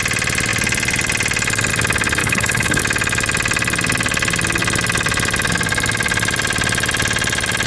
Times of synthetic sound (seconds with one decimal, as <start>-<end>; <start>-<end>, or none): 2.2-2.8